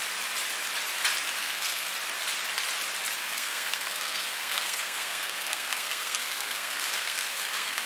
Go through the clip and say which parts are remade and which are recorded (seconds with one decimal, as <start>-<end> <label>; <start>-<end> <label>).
0.0-1.4 recorded; 1.4-1.9 remade; 1.9-3.2 recorded; 3.2-7.9 remade